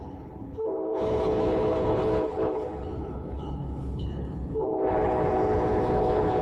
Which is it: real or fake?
fake